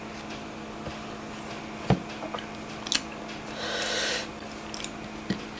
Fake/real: real